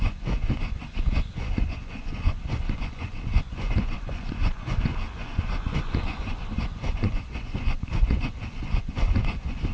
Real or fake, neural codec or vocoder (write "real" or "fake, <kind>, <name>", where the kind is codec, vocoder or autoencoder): fake, vocoder, Vocos